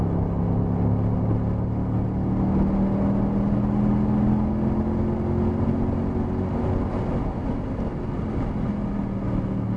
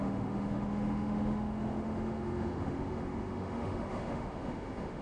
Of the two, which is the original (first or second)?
first